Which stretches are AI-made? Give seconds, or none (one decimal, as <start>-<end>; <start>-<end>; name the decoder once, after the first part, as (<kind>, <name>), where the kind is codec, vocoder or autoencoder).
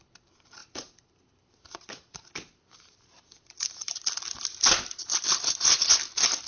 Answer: 0.6-4.2 (vocoder, BigVGAN v2); 5.1-5.9